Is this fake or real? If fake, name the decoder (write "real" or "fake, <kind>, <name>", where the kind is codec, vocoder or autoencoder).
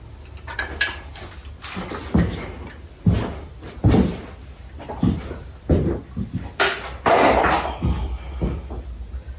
real